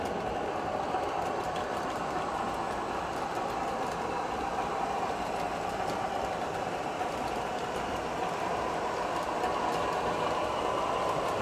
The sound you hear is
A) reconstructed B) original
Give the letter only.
A